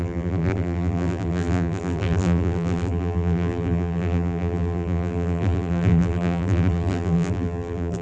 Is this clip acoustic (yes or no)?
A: no